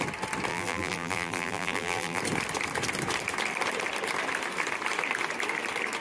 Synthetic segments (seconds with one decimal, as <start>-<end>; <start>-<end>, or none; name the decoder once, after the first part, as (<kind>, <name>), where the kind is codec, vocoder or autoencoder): 0.5-2.2 (vocoder, BigVGAN v2)